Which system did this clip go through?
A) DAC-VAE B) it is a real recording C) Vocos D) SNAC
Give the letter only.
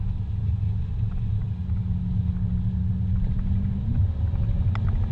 B